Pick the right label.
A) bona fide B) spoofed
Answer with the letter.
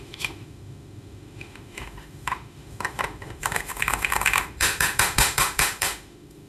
B